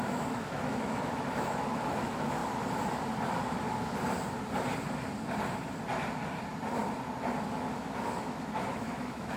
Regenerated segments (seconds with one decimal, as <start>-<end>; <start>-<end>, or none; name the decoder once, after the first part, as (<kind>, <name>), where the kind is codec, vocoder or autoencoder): 0.0-2.4 (autoencoder, DAC-VAE); 7.4-9.4